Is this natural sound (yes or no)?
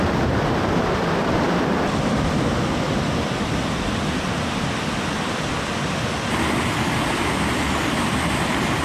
yes